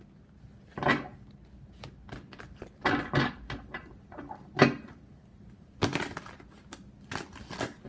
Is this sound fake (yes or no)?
no